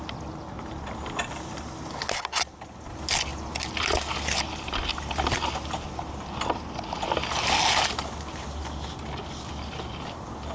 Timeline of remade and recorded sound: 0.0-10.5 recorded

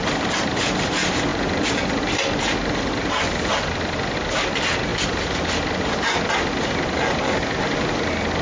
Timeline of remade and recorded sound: 0.0-8.4 recorded